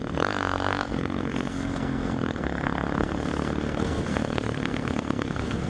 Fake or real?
fake